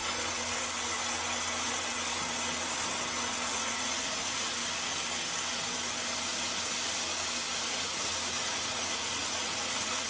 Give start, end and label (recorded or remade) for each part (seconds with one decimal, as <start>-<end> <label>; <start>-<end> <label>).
0.0-3.4 recorded; 3.4-4.6 remade; 4.6-7.6 recorded; 7.6-10.1 remade